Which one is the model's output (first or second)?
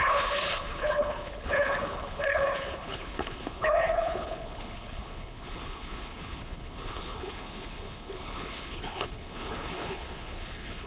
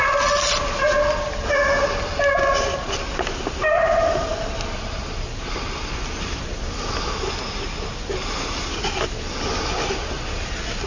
first